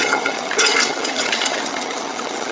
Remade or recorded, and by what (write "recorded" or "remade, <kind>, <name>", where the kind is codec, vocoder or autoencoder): remade, vocoder, HiFi-GAN